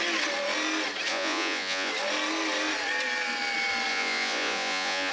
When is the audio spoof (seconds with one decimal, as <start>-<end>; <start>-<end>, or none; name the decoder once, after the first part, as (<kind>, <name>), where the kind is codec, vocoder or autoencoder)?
1.1-1.9 (vocoder, Vocos); 3.9-5.1